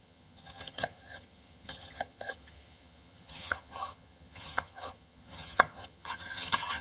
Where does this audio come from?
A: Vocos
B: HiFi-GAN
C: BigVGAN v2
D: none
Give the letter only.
B